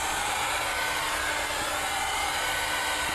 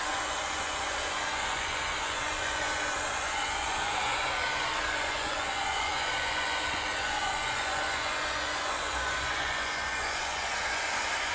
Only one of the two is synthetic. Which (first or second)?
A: second